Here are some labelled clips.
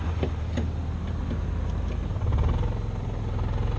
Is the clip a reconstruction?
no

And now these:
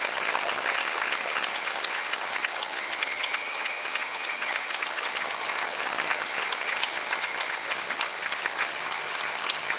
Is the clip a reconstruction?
yes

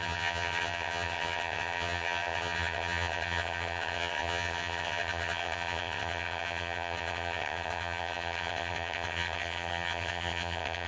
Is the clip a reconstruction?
yes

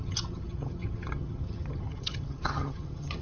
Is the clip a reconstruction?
yes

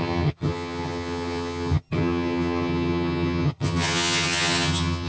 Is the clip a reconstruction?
yes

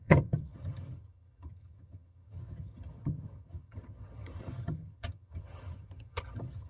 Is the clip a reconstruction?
yes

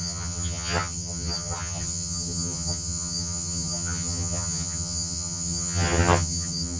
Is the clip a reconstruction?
yes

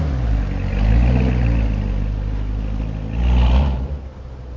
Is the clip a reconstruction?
no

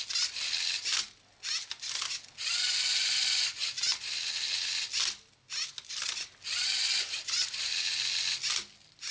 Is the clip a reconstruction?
no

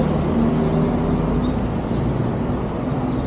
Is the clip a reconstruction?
no